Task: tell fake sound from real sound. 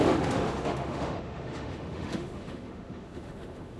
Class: fake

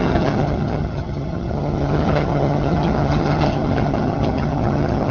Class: fake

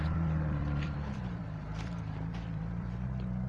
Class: fake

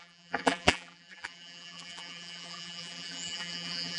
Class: fake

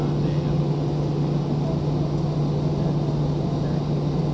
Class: real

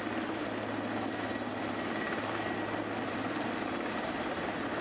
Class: real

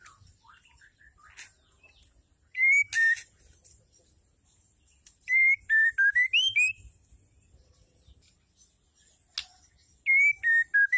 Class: real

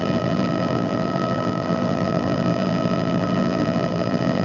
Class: fake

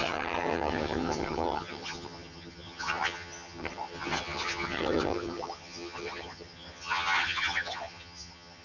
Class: fake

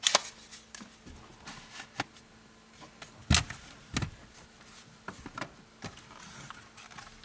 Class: real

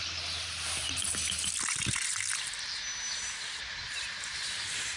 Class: real